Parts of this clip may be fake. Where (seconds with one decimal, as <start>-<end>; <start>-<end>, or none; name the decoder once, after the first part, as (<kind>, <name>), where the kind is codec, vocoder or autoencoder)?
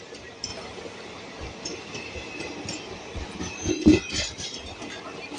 none